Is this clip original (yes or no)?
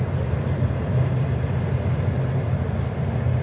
yes